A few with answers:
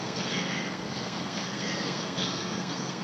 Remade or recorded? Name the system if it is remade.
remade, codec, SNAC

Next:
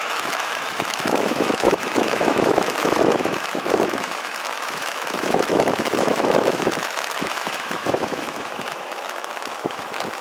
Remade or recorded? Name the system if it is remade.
remade, autoencoder, DAC-VAE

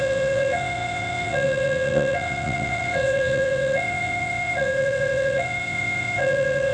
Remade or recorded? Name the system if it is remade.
remade, vocoder, WaveNeXt